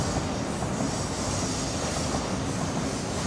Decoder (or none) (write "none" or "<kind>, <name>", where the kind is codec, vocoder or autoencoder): none